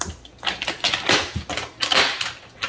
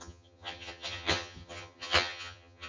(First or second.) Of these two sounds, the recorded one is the first